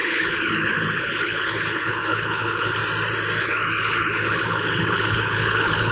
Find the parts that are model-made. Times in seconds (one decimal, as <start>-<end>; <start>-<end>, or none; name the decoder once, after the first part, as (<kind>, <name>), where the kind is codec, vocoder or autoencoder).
0.0-2.8 (codec, HILCodec); 3.4-5.9